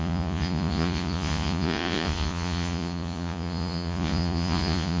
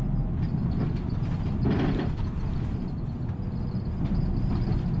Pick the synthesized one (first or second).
first